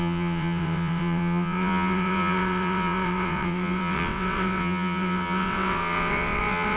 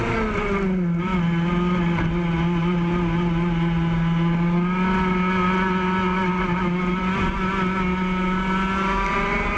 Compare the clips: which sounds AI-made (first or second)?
first